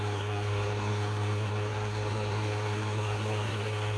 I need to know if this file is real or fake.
fake